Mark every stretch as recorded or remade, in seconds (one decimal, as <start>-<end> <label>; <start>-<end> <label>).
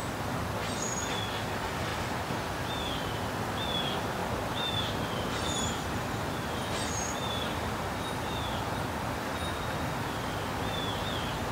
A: 0.0-1.9 recorded; 1.9-2.8 remade; 2.8-4.2 recorded; 4.2-8.6 remade; 8.6-11.5 recorded